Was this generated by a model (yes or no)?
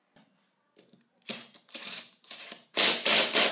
no